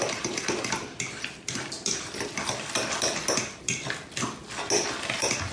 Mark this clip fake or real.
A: real